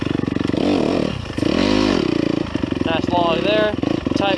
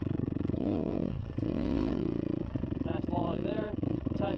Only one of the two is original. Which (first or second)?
first